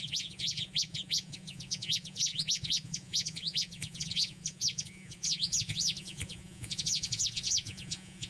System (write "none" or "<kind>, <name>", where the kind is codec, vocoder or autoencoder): vocoder, Vocos